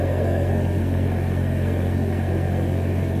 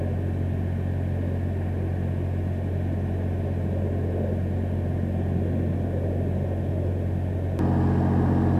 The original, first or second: second